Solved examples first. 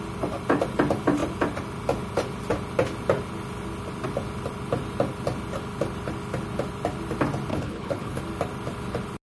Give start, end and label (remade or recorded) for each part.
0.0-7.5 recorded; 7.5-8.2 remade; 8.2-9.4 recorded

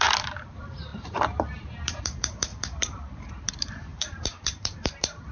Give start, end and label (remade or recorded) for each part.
0.0-5.3 remade

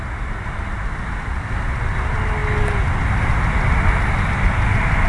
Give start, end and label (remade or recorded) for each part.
0.0-5.1 recorded

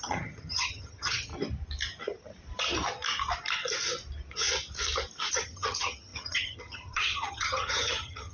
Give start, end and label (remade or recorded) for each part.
0.0-1.3 remade; 1.3-5.3 recorded; 5.3-8.3 remade